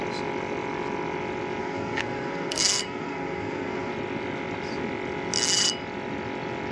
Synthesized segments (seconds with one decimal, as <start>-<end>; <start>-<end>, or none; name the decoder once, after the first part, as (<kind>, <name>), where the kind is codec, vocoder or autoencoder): 1.6-3.9 (codec, SNAC)